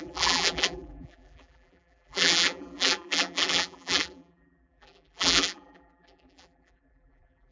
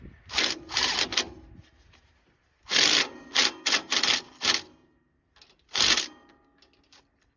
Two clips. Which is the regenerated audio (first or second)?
first